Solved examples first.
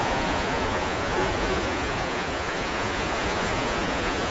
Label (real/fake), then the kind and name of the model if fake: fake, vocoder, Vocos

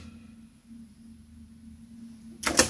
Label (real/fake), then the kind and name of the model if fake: real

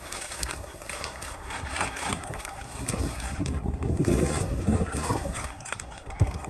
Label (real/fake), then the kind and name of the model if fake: fake, codec, SNAC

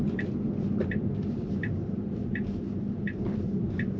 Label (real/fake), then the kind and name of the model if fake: real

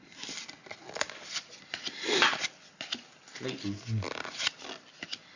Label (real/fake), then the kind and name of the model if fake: real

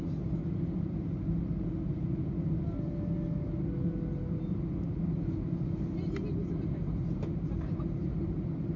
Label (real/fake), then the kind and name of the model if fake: real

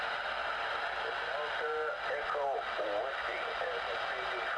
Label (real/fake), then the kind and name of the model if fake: real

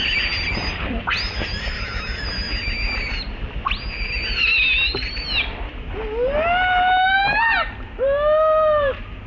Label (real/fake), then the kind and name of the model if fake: real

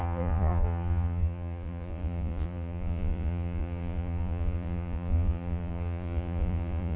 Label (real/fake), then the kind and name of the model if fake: fake, vocoder, Vocos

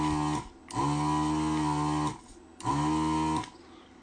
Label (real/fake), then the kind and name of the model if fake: real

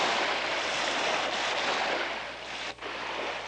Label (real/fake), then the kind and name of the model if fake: real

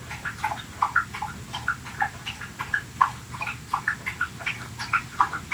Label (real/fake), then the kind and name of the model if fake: real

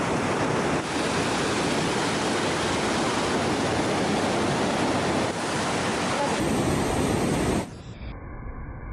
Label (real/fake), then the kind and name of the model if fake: real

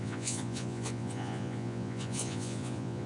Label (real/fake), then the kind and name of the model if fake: fake, vocoder, Vocos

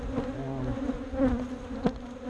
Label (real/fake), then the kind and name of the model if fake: real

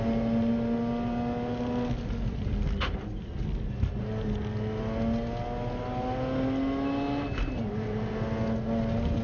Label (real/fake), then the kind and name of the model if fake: real